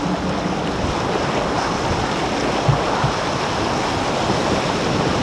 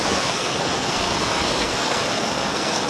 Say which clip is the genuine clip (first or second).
first